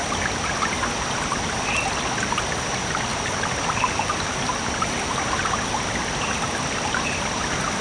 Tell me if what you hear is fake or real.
real